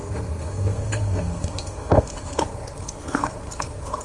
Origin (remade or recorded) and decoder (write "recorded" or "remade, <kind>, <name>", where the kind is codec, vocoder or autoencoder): remade, codec, SNAC